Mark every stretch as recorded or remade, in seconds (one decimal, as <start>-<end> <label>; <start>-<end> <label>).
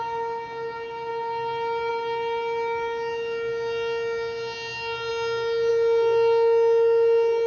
0.0-7.5 recorded